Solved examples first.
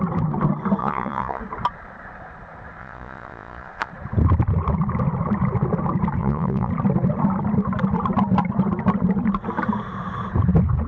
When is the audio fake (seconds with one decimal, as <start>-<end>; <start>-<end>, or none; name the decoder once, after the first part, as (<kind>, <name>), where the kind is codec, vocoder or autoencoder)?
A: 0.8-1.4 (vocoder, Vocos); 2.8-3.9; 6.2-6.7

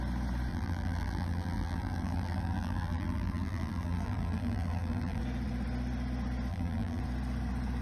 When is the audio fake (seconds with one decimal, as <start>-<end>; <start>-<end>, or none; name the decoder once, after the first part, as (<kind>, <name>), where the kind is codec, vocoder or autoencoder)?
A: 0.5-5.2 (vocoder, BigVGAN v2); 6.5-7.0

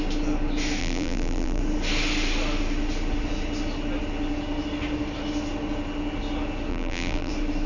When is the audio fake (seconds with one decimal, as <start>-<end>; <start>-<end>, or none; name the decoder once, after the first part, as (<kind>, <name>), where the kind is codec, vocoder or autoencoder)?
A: 0.8-1.6 (vocoder, BigVGAN v2); 6.7-7.3

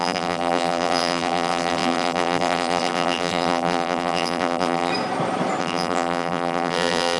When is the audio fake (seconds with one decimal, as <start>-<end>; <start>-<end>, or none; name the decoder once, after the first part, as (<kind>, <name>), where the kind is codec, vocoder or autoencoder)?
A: 0.0-4.9 (vocoder, BigVGAN v2); 5.6-7.2

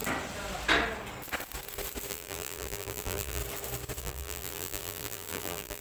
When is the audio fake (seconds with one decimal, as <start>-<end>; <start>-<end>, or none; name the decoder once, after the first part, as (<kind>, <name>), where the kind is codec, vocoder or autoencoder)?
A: 2.1-3.4 (vocoder, BigVGAN v2); 4.0-5.8

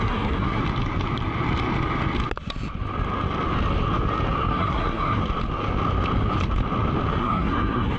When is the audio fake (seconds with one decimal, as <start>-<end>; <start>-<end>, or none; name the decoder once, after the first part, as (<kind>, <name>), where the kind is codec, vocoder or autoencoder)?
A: 0.0-0.6 (codec, SNAC); 4.5-5.2; 7.2-8.0

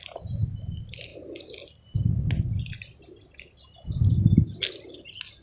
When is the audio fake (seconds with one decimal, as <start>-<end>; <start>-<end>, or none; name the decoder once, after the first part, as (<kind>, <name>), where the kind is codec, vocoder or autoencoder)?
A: none